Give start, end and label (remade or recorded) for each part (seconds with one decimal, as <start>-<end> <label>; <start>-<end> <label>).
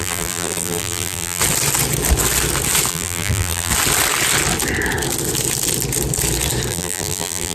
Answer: 0.0-1.4 remade; 1.4-2.9 recorded; 2.9-3.7 remade; 3.7-6.7 recorded; 6.7-7.5 remade